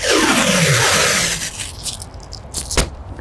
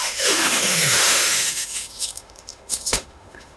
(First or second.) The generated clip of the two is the second